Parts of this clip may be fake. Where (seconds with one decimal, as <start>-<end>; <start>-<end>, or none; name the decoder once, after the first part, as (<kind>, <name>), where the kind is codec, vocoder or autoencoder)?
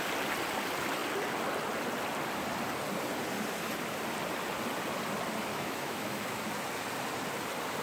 5.5-6.4 (autoencoder, DAC-VAE)